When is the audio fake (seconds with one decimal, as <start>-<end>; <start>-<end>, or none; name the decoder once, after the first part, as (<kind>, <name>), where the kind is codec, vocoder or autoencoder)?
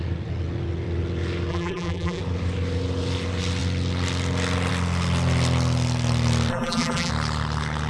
1.5-2.2 (vocoder, BigVGAN v2); 6.5-7.1